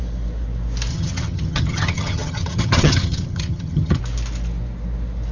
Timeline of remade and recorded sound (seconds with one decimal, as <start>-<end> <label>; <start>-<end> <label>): 0.0-0.9 recorded; 0.9-4.0 remade; 4.0-5.3 recorded